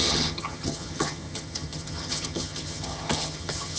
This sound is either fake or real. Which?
fake